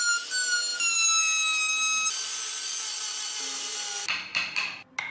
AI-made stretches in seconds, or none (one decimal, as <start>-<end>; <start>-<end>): none